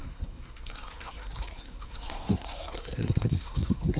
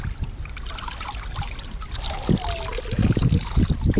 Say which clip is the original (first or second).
second